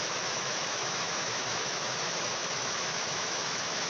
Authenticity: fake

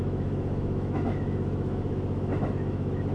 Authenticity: fake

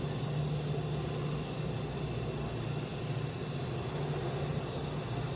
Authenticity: real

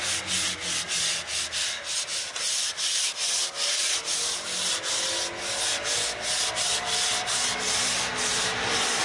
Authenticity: real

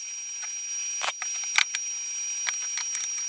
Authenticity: real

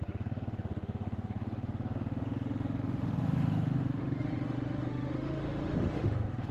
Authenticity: fake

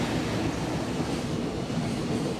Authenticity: real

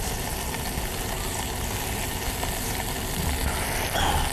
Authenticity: real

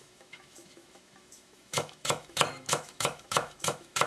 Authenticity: fake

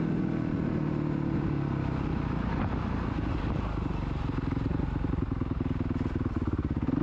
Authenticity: real